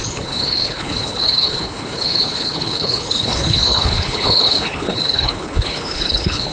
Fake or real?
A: fake